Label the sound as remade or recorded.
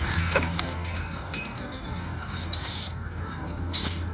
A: remade